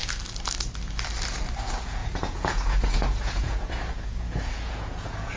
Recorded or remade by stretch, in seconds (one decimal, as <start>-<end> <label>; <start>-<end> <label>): 0.0-1.6 recorded; 1.6-5.4 remade